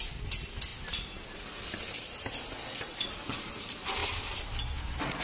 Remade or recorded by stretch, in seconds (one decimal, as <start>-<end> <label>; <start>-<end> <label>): 0.0-5.2 recorded